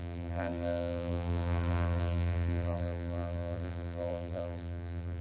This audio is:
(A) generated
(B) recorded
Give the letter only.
A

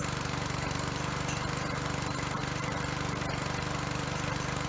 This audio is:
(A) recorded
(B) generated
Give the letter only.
B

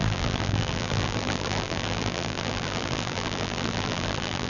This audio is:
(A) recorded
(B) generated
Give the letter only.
B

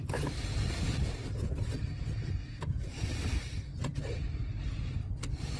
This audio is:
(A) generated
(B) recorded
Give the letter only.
B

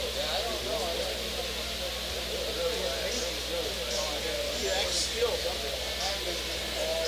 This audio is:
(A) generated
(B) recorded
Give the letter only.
B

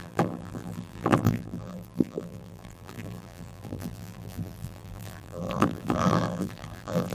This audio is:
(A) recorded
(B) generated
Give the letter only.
B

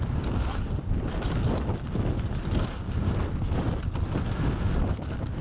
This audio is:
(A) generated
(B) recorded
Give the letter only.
B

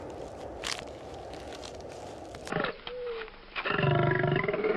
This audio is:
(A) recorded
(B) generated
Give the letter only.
A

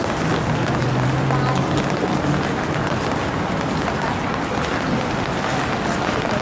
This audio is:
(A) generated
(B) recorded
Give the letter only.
B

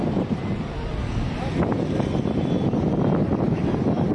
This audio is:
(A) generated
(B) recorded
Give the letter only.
B